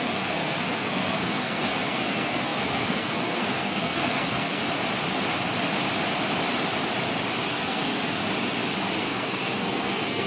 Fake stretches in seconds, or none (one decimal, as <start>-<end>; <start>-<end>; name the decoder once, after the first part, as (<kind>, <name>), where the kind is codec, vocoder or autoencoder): 0.0-4.6 (codec, SNAC); 7.5-8.2; 9.0-10.3